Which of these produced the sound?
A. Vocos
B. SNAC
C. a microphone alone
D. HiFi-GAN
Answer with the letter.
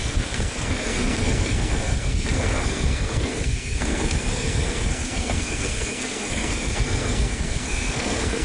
B